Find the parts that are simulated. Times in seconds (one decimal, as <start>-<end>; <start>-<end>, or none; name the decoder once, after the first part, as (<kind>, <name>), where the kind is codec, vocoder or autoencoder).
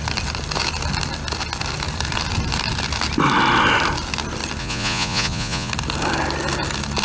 4.6-5.7 (vocoder, Vocos)